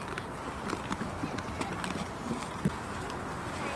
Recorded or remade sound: recorded